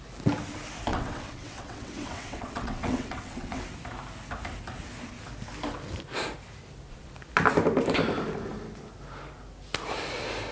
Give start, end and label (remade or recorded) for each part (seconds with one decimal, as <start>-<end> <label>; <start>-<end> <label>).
0.0-0.9 recorded; 0.9-3.6 remade; 3.6-10.5 recorded